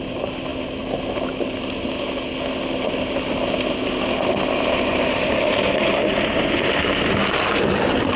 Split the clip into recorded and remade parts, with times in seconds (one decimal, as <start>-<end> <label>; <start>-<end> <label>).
0.0-8.2 recorded